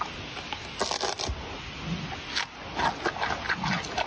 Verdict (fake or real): real